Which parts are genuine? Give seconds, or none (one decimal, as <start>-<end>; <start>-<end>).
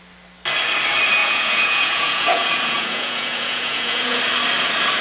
0.0-1.2; 4.2-5.0